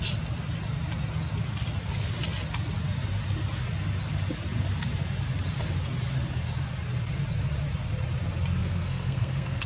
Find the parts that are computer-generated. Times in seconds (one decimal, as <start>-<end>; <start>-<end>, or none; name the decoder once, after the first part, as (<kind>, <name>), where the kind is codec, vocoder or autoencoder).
8.6-9.7 (codec, SNAC)